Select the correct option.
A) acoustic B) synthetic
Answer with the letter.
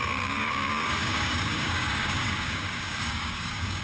B